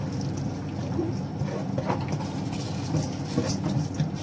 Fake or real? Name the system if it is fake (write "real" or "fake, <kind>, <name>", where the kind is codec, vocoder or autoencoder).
real